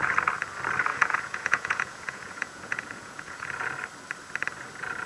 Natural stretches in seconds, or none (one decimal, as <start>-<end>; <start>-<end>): 0.0-0.9; 3.5-5.1